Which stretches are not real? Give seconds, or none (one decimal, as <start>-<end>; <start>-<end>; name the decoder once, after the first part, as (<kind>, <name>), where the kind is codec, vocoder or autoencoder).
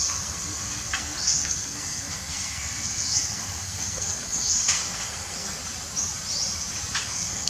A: 0.0-5.6 (codec, SNAC); 7.0-7.5